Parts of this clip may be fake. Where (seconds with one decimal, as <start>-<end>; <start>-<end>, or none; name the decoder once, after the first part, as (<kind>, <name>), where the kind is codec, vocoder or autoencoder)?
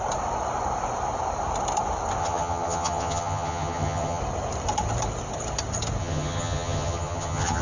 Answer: 2.2-4.2 (vocoder, HiFi-GAN); 6.0-7.6